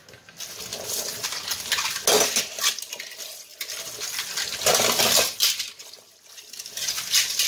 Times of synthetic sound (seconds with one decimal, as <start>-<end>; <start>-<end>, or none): none